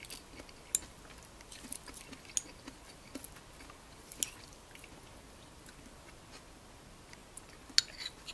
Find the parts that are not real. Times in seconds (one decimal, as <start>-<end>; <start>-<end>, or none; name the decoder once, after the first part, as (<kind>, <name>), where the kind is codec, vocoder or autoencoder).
none